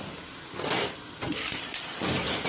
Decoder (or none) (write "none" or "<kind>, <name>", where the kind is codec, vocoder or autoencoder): none